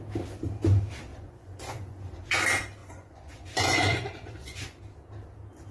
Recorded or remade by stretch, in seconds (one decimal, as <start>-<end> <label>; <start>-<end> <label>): 0.0-1.1 recorded; 1.1-2.4 remade; 2.4-2.8 recorded; 2.8-4.8 remade; 4.8-5.7 recorded